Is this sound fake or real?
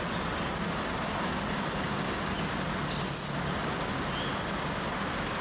real